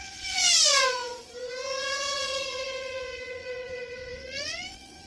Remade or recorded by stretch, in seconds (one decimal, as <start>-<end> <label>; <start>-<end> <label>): 0.0-5.1 remade